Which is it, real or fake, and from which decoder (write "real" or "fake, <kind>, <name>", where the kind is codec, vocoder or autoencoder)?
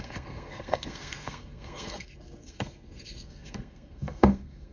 fake, codec, SNAC